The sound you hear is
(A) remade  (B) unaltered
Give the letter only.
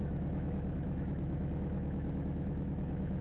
A